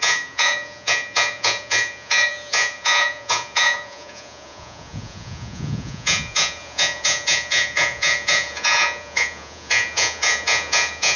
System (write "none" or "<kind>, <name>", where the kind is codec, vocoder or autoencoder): vocoder, Vocos